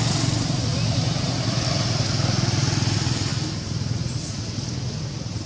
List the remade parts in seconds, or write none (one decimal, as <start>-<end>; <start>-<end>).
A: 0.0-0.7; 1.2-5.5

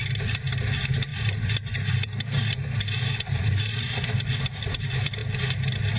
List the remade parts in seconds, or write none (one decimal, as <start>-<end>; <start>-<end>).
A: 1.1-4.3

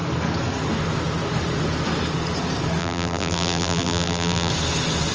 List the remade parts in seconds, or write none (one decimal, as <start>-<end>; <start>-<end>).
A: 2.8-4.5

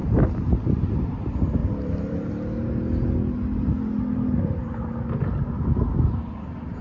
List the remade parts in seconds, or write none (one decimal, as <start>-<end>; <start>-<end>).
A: 1.6-2.3

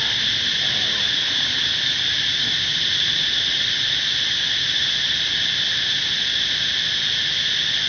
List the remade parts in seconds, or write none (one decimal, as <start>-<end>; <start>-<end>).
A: 0.0-2.7; 3.6-7.9

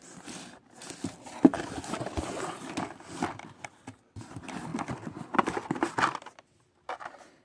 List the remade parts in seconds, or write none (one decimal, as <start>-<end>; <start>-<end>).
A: 1.5-2.6; 4.7-5.7